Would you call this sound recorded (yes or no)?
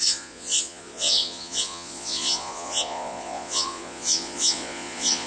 no